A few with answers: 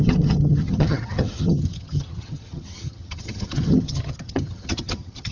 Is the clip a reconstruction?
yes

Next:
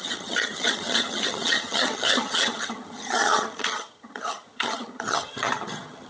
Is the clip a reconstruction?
yes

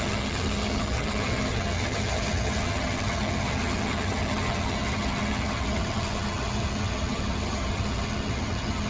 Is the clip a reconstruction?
yes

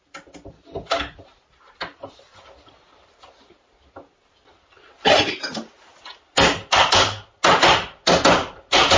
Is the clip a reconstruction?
no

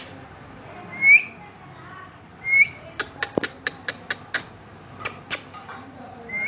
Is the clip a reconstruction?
no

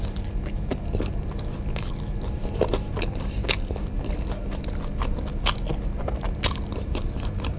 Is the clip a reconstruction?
no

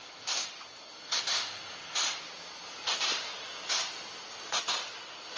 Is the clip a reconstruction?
no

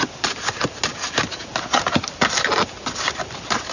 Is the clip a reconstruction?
no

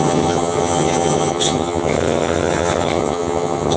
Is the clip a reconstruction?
yes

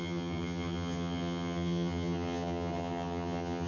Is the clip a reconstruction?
yes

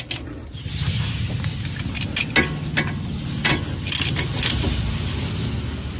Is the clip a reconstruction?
no